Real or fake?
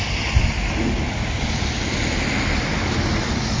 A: real